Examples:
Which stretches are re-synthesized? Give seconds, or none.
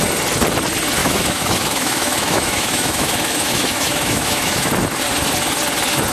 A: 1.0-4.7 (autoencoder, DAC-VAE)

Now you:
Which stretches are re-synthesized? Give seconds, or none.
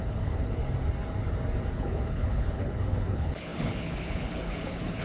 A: 0.0-0.6 (codec, HILCodec); 1.7-5.0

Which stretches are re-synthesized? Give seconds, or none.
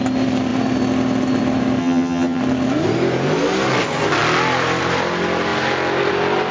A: 1.8-2.4 (vocoder, HiFi-GAN)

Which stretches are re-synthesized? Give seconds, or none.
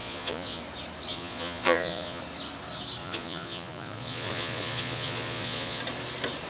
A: 0.0-0.6 (vocoder, Vocos); 1.1-2.2; 3.0-5.8